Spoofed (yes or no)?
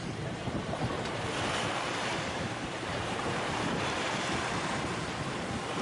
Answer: yes